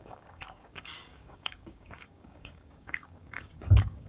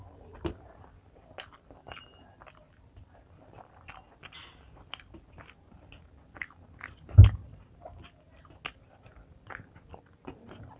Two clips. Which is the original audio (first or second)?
second